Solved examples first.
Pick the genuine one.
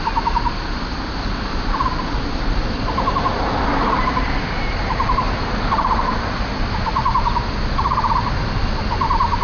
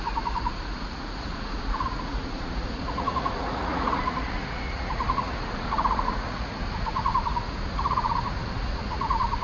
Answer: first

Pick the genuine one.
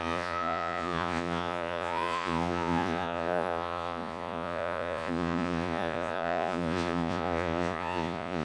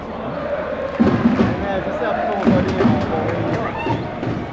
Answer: second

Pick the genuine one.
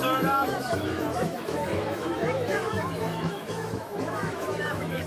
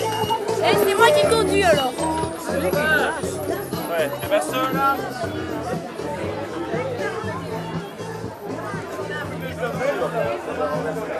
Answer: second